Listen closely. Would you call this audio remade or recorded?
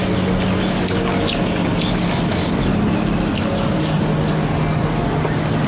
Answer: recorded